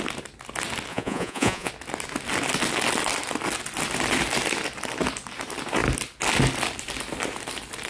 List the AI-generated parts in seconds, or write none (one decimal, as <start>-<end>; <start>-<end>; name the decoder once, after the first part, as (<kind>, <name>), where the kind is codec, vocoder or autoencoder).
0.9-1.7 (vocoder, Vocos)